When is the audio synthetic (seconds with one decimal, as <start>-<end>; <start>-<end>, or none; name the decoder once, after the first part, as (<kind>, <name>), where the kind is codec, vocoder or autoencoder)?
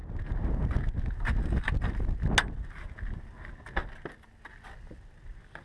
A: none